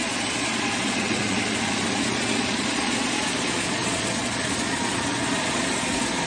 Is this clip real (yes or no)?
no